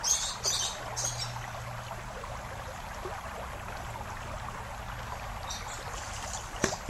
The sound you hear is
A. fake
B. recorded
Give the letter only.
B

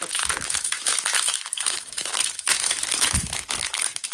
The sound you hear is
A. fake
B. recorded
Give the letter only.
A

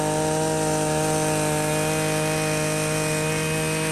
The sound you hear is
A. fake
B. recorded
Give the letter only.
B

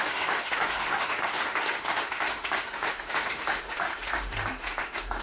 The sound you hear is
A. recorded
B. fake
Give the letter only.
B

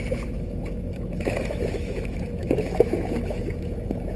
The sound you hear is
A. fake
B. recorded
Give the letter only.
A